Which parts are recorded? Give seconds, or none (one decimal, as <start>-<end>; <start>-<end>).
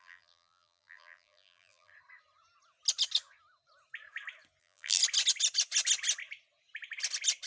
1.9-4.6; 5.0-7.5